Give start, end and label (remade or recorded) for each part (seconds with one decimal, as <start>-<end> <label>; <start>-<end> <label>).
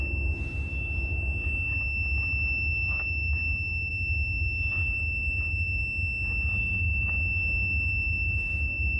0.0-2.3 recorded; 2.3-3.9 remade; 3.9-4.7 recorded; 4.7-5.8 remade; 5.8-6.6 recorded; 6.6-9.0 remade